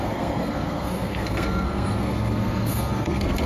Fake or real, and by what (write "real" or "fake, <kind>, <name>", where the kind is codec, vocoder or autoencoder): fake, codec, SNAC